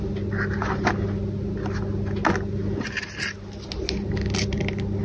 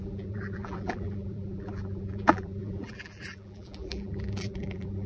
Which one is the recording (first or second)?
first